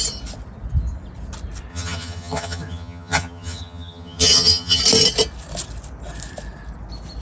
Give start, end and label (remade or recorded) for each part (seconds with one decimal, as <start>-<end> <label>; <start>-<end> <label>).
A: 0.0-1.7 recorded; 1.7-4.8 remade; 4.8-7.2 recorded